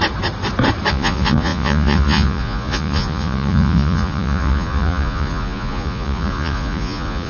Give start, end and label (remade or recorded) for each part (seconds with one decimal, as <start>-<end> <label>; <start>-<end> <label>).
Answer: 0.0-0.9 recorded; 0.9-7.3 remade

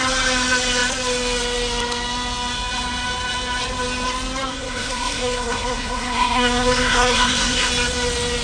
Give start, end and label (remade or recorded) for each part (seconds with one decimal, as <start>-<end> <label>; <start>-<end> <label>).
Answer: 0.0-4.5 recorded; 4.5-7.7 remade; 7.7-8.4 recorded

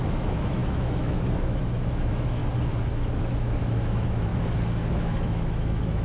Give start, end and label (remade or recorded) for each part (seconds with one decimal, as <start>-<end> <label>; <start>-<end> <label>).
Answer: 0.0-2.4 remade; 2.4-3.3 recorded; 3.3-4.3 remade; 4.3-4.9 recorded; 4.9-6.0 remade